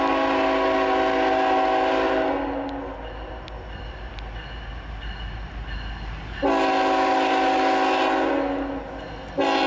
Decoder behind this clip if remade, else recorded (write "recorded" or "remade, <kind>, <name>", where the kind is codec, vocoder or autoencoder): recorded